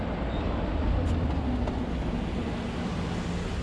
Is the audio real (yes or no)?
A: yes